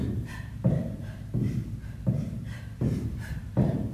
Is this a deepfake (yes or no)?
yes